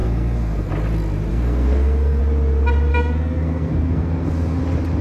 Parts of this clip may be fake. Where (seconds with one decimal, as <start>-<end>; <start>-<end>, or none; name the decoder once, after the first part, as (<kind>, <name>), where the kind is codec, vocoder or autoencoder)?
0.0-0.7 (codec, SNAC); 1.3-2.2; 2.9-4.6